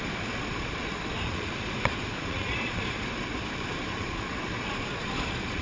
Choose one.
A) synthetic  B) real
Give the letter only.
A